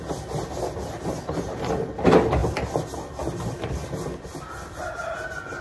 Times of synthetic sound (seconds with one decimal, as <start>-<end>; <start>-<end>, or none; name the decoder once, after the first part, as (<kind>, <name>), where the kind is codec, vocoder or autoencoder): none